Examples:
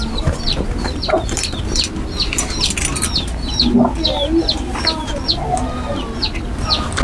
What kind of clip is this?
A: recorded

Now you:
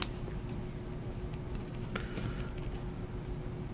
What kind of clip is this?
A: recorded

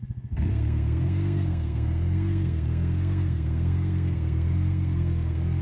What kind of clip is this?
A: remade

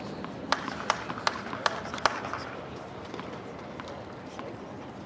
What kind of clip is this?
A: recorded